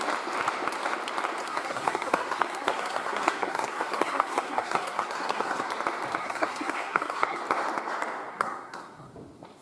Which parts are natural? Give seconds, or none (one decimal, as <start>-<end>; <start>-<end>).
0.0-1.4; 5.7-6.2; 7.4-8.3; 9.1-9.6